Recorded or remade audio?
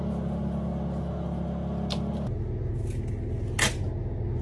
recorded